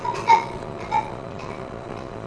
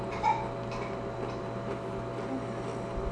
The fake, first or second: first